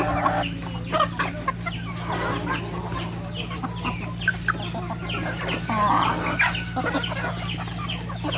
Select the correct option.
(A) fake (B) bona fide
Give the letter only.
B